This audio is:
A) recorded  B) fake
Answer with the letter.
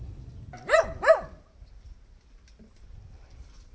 A